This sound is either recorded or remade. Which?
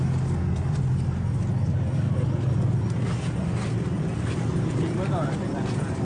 recorded